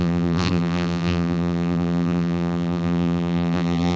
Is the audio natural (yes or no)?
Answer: no